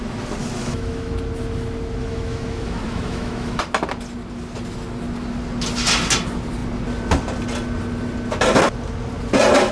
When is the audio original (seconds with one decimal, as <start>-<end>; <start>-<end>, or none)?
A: 0.0-0.4; 1.1-2.0; 3.6-9.7